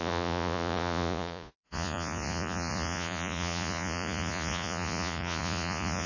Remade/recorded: remade